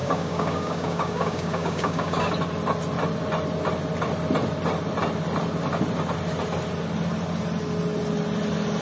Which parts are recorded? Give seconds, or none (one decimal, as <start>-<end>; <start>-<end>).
2.3-8.8